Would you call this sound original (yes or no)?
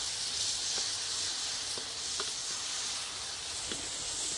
yes